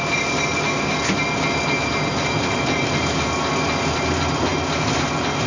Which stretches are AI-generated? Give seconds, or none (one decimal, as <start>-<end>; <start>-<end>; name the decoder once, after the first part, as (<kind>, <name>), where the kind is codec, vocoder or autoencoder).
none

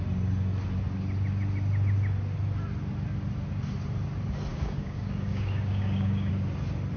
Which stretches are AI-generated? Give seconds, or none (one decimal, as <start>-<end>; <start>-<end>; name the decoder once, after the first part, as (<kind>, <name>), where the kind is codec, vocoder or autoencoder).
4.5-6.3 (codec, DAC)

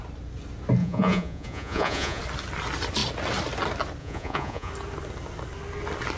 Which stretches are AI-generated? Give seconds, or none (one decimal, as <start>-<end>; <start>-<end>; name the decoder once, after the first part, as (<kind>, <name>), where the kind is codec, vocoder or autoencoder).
0.8-2.2 (vocoder, Vocos); 4.0-4.7

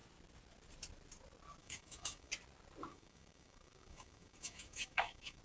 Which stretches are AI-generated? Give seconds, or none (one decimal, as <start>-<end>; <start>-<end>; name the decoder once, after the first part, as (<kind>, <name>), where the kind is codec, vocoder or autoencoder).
1.6-2.3 (autoencoder, DAC-VAE); 2.9-5.4

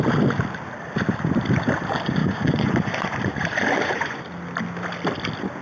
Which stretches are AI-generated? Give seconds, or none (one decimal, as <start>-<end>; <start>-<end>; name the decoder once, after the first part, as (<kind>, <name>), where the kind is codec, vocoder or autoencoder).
2.2-4.2 (vocoder, Vocos)